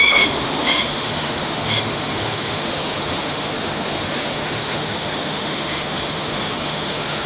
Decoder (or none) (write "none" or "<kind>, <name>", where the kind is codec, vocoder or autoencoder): autoencoder, DAC-VAE